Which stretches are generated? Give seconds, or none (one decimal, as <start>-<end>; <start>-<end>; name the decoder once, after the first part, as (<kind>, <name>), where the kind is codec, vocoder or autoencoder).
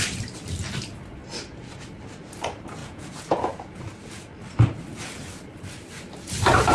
2.8-3.8 (vocoder, Vocos)